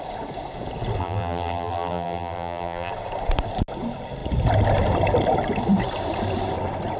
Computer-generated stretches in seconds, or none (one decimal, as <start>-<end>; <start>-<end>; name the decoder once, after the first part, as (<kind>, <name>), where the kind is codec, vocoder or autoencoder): 1.0-2.9 (vocoder, BigVGAN v2)